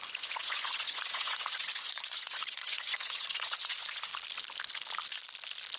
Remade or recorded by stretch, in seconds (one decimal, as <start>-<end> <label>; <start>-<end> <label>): 0.0-4.1 remade; 4.1-5.8 recorded

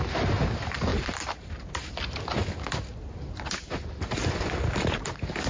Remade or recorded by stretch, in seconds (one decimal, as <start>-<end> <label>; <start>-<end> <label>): 0.0-0.9 recorded; 0.9-1.6 remade; 1.6-5.5 recorded

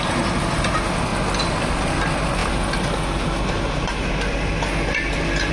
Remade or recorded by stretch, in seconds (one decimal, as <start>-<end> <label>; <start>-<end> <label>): 0.0-5.5 recorded

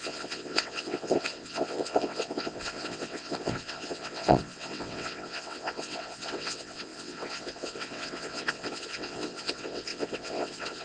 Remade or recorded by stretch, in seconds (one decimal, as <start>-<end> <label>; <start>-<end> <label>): 0.0-10.8 remade

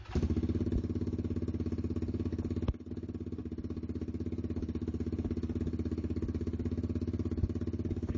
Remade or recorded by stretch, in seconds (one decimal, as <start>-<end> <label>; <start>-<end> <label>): 0.0-8.2 recorded

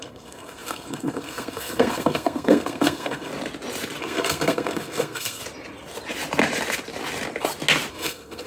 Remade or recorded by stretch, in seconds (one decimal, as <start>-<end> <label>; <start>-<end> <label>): 0.0-3.3 remade; 3.3-4.0 recorded; 4.0-5.4 remade; 5.4-7.9 recorded; 7.9-8.5 remade

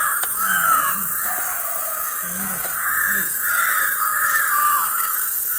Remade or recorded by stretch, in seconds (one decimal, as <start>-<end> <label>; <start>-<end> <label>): 0.0-5.6 remade

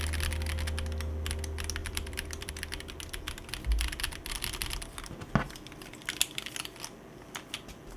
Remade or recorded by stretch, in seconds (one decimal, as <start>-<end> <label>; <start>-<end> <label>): 0.0-1.8 recorded; 1.8-2.5 remade; 2.5-8.0 recorded